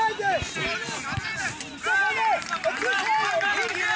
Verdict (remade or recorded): recorded